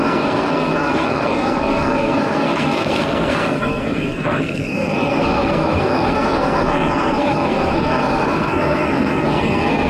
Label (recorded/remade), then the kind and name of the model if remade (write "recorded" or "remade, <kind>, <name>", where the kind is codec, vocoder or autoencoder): remade, codec, SNAC